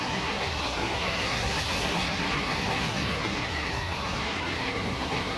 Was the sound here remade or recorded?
remade